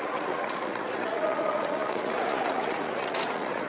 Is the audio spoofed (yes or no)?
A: yes